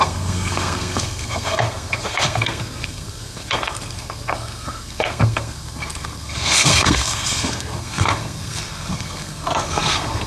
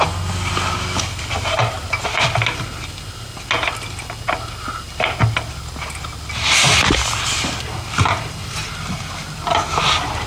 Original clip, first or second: second